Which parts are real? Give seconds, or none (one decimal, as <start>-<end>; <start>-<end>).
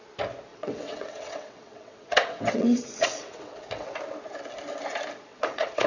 0.0-0.5; 4.0-5.3